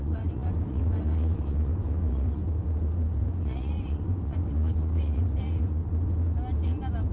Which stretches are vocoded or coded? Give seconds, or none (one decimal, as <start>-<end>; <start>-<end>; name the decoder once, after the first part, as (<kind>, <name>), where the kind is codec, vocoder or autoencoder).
0.0-2.4 (vocoder, Vocos); 3.2-5.8